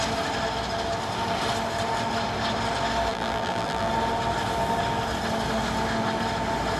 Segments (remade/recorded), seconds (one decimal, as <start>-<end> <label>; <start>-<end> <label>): 0.0-3.1 recorded; 3.1-3.9 remade; 3.9-6.8 recorded